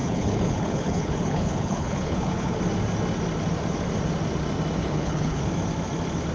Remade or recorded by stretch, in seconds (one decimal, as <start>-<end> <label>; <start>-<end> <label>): 0.0-2.6 remade; 2.6-4.8 recorded; 4.8-5.4 remade; 5.4-6.3 recorded